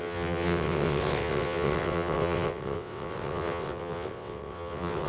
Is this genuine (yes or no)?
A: no